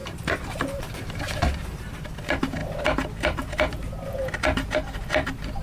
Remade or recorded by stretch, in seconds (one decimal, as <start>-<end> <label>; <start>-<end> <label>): 0.0-2.0 remade; 2.0-5.6 recorded

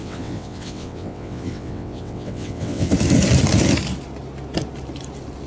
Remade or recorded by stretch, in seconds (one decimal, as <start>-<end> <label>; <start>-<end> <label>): 0.0-2.9 remade; 2.9-5.5 recorded

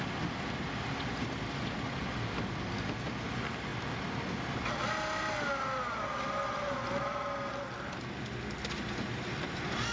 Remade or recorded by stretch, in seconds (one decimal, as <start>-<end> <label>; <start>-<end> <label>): 0.0-9.9 recorded

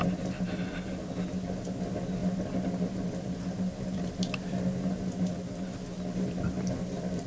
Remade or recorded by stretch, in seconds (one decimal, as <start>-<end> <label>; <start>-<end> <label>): 0.0-7.3 recorded